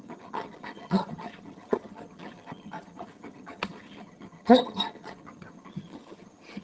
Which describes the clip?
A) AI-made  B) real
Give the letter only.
A